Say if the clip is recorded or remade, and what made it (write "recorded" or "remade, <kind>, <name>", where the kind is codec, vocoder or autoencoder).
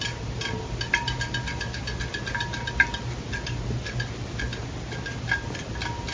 recorded